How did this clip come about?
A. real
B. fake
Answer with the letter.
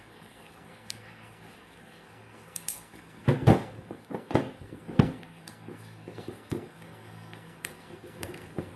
B